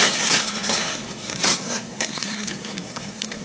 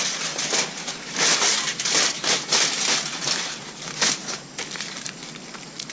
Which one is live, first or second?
second